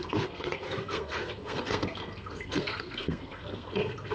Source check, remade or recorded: remade